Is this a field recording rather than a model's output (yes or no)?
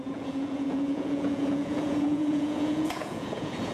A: no